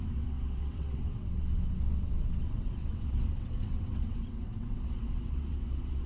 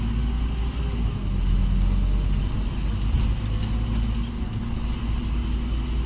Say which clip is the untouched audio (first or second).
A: second